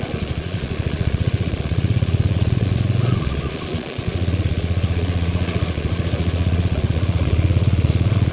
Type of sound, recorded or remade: remade